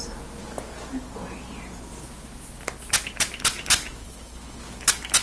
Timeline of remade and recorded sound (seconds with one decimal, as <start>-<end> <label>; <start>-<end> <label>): 0.0-4.0 recorded; 4.0-4.6 remade; 4.6-5.2 recorded